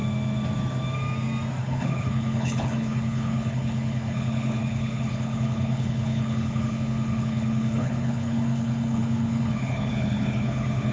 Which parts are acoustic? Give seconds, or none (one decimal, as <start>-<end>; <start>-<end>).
0.0-1.6